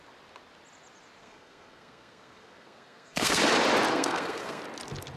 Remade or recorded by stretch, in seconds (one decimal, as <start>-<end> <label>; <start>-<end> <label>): 0.0-1.2 recorded; 1.2-3.4 remade; 3.4-3.9 recorded; 3.9-4.6 remade; 4.6-5.2 recorded